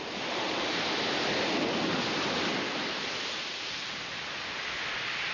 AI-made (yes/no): no